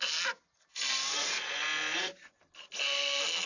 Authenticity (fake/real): real